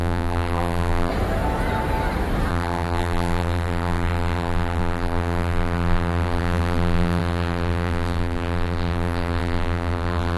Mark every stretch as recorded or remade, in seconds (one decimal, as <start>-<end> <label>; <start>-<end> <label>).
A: 0.0-1.1 remade; 1.1-2.5 recorded; 2.5-10.4 remade